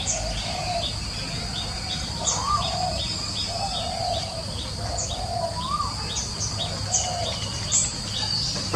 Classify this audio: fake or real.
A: real